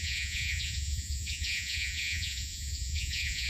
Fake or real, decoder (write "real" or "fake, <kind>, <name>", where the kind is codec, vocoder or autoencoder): fake, vocoder, Vocos